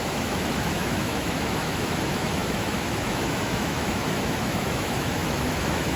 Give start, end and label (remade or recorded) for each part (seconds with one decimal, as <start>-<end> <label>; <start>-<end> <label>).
0.0-6.0 remade